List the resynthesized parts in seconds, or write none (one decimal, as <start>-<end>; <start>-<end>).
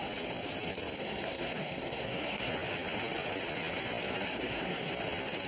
1.0-2.5; 4.3-4.9